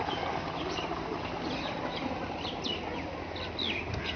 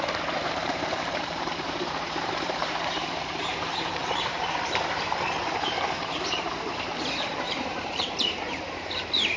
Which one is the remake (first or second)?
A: second